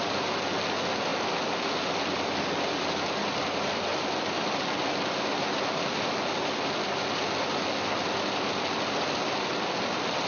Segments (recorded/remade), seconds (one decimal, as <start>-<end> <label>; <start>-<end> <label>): 0.0-10.3 recorded

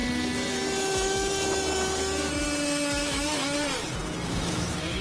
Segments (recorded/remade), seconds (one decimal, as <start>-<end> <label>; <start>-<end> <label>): 0.0-2.9 recorded; 2.9-3.4 remade; 3.4-4.3 recorded; 4.3-5.0 remade

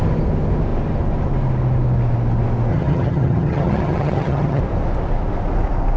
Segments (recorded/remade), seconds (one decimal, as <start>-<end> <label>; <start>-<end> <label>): 0.0-2.7 recorded; 2.7-4.6 remade; 4.6-6.0 recorded

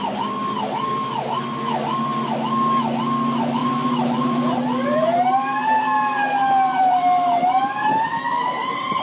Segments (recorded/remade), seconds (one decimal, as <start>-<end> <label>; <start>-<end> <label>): 0.0-3.6 recorded; 3.6-9.0 remade